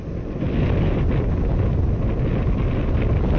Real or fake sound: real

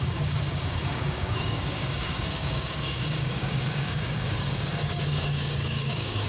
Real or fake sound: fake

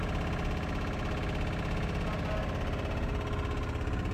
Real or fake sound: real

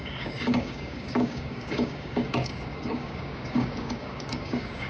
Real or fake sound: fake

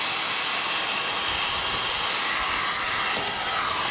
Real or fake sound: real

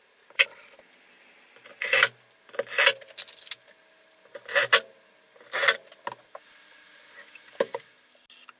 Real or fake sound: real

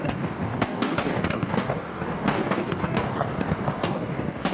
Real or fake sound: fake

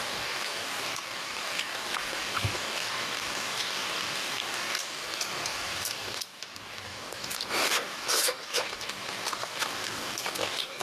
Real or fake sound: fake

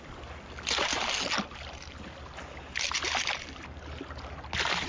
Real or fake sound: real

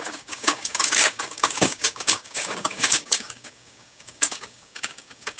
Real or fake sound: fake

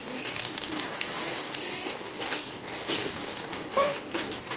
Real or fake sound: fake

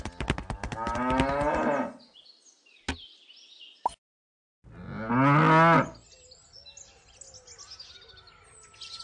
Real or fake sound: real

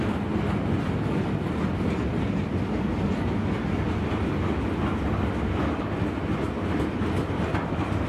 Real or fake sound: real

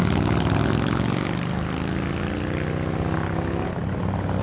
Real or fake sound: real